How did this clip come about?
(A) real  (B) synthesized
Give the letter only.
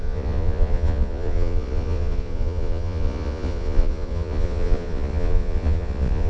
B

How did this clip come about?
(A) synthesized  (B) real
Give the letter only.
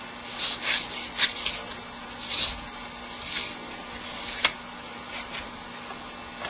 B